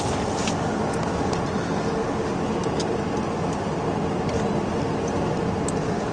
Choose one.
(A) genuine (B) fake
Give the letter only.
A